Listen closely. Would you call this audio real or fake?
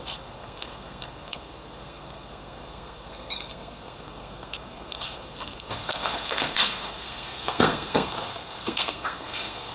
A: fake